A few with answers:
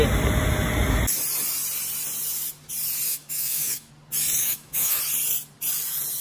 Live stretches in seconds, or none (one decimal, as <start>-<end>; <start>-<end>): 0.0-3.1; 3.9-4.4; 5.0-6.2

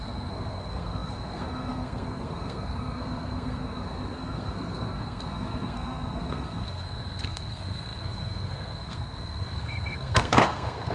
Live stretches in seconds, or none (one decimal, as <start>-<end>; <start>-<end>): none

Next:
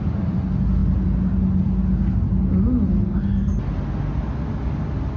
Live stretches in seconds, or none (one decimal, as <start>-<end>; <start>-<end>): 0.0-5.2

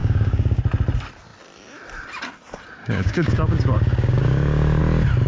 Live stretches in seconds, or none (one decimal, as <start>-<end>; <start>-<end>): 0.6-2.8; 4.8-5.3